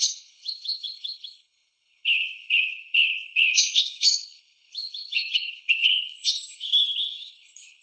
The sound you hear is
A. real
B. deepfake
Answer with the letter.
B